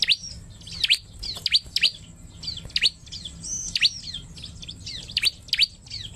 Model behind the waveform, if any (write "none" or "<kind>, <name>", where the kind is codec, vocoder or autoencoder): none